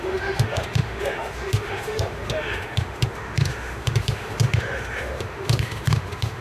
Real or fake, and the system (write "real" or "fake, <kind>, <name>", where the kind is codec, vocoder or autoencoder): fake, autoencoder, DAC-VAE